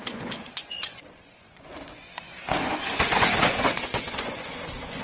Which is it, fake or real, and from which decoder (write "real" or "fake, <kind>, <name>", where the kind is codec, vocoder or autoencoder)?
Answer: fake, vocoder, Vocos